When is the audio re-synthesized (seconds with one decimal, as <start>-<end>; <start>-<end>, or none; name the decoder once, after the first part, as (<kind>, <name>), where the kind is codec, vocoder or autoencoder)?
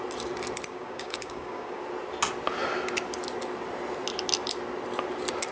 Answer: 0.7-1.8 (codec, DAC)